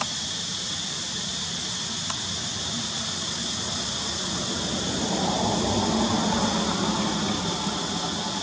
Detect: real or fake real